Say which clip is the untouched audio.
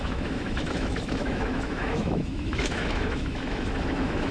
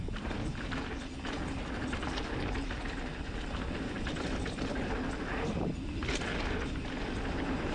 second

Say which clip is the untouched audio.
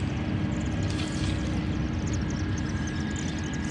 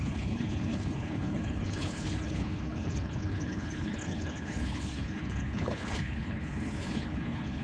first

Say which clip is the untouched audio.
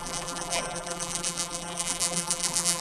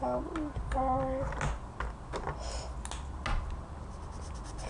second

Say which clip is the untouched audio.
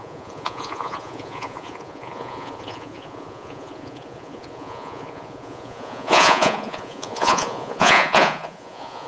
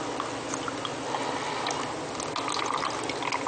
second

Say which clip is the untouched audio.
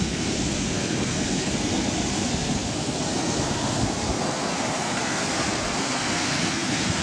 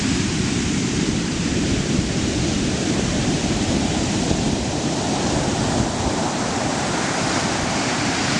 second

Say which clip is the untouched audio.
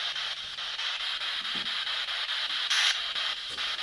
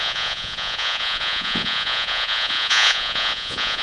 first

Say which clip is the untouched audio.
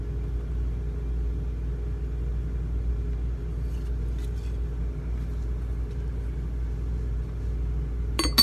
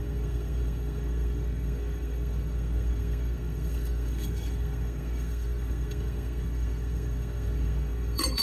first